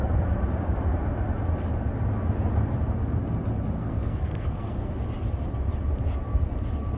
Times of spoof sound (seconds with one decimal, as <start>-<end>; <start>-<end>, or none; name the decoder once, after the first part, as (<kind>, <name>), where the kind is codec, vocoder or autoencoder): 3.8-4.9 (codec, SNAC)